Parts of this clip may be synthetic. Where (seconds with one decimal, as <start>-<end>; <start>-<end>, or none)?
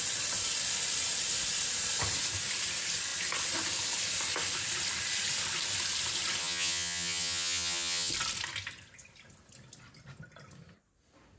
6.4-8.1